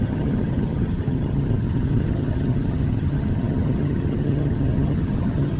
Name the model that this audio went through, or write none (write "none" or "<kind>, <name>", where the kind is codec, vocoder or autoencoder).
vocoder, HiFi-GAN